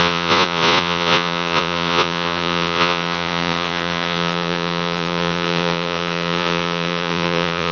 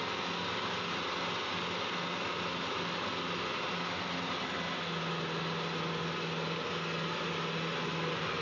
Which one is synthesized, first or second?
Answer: first